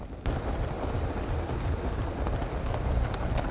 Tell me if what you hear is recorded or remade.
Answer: recorded